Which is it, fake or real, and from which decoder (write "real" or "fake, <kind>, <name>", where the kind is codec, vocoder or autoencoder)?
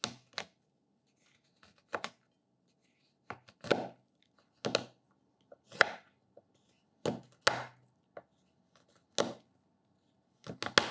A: real